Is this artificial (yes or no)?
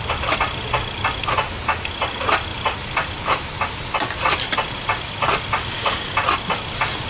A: no